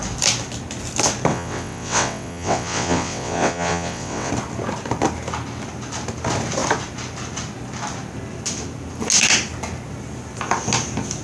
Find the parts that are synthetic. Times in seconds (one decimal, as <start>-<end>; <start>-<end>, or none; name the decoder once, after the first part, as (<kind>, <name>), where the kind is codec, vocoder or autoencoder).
1.3-4.3 (vocoder, WaveNeXt)